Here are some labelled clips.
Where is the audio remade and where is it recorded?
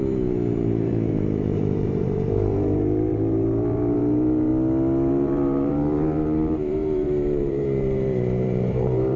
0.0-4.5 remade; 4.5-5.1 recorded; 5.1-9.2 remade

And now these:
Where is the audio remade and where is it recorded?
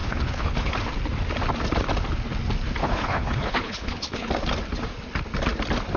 0.0-0.7 remade; 0.7-2.8 recorded; 2.8-4.3 remade; 4.3-6.0 recorded